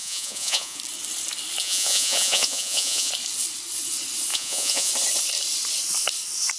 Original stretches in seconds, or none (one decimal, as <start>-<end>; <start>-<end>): 0.8-1.6; 3.1-4.3; 4.9-6.6